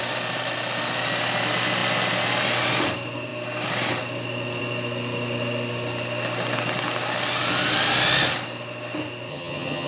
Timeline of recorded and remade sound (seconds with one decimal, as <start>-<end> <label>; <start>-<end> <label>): 0.0-9.3 recorded; 9.3-9.9 remade